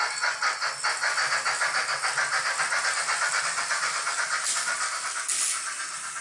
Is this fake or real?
real